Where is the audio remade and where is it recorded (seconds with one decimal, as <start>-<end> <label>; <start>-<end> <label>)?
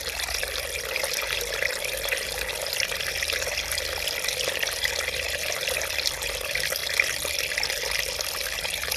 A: 0.0-6.8 remade; 6.8-8.6 recorded; 8.6-9.0 remade